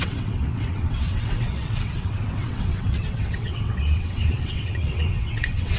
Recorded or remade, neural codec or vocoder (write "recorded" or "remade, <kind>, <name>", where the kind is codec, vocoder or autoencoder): remade, vocoder, WaveNeXt